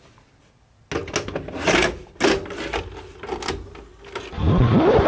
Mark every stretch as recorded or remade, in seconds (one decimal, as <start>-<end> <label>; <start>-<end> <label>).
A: 0.0-5.1 recorded